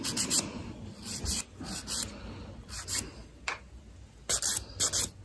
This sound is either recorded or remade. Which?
recorded